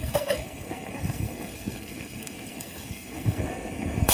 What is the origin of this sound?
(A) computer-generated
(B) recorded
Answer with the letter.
A